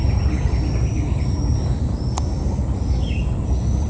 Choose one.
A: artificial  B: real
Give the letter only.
B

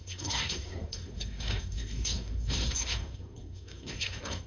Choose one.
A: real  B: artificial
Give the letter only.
B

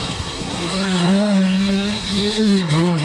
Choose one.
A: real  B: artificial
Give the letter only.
B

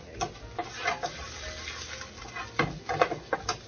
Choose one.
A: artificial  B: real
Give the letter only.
B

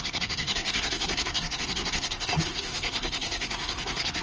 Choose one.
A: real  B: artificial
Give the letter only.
B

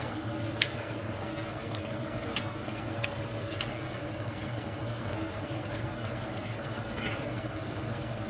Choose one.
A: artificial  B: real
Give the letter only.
A